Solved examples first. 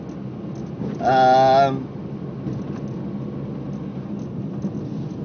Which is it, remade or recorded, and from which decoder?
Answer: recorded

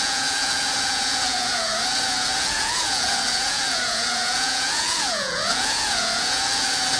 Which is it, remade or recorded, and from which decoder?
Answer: remade, vocoder, Vocos